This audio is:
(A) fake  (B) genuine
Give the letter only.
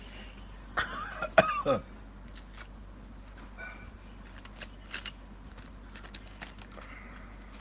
B